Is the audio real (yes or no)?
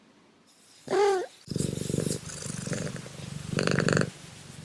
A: no